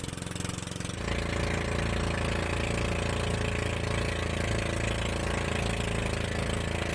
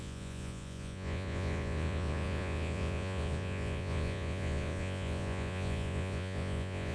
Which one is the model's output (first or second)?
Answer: second